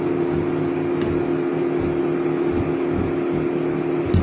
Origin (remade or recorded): recorded